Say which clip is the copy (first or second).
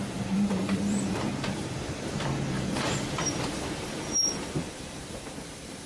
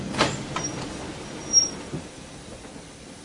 first